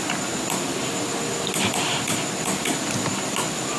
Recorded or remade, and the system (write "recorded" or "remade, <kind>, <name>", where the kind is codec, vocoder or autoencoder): recorded